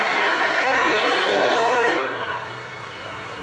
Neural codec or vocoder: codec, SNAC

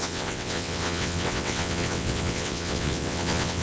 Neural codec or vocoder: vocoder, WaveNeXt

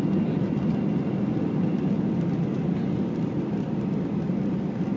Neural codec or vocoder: none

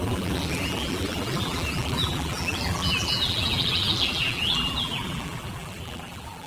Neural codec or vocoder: vocoder, BigVGAN v2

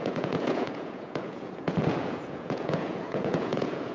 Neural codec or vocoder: vocoder, Vocos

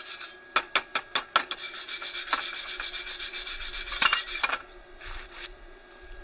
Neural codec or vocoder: none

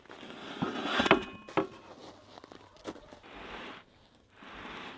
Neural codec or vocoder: none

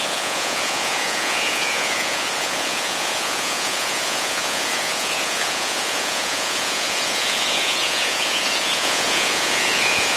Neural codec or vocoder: vocoder, Vocos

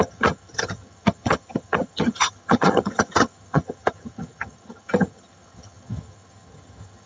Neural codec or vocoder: vocoder, HiFi-GAN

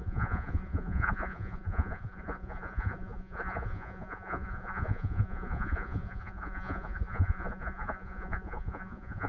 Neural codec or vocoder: vocoder, Vocos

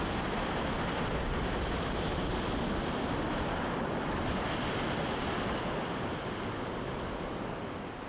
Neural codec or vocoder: none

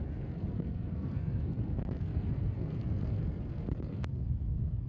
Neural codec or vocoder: codec, SNAC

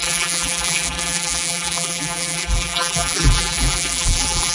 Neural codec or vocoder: vocoder, BigVGAN v2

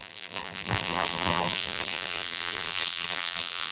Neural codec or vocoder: vocoder, BigVGAN v2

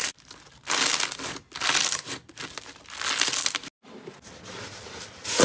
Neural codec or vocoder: none